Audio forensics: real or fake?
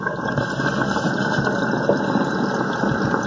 real